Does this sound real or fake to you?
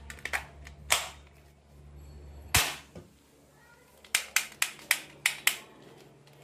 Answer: real